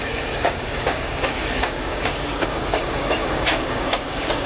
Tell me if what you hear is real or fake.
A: fake